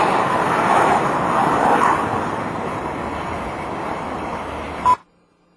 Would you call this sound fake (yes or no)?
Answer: no